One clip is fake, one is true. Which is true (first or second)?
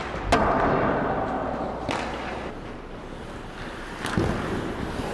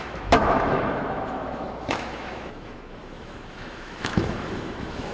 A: first